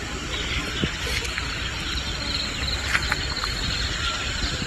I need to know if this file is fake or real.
real